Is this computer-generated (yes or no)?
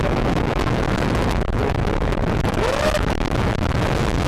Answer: yes